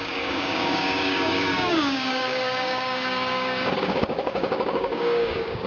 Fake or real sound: fake